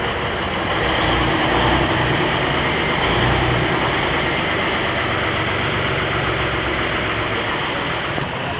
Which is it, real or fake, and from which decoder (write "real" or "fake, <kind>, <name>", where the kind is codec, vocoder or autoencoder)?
real